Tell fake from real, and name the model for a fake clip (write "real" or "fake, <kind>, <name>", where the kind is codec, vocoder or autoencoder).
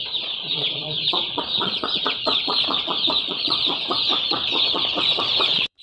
fake, vocoder, Vocos